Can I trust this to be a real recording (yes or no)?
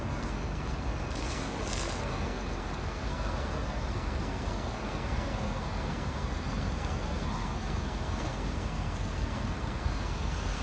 no